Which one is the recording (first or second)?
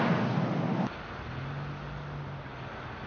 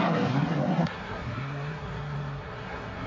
first